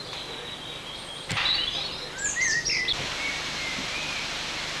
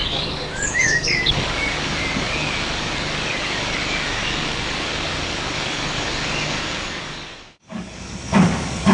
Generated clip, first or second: second